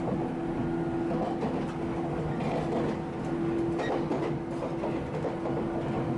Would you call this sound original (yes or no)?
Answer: yes